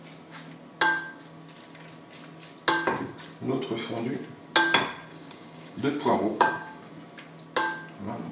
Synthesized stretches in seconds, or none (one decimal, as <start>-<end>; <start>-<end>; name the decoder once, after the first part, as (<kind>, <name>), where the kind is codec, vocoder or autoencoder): 5.1-6.9 (codec, DAC)